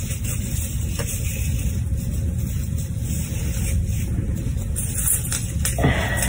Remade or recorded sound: recorded